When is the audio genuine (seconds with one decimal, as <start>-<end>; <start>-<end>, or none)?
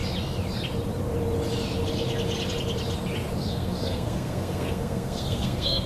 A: 0.0-3.4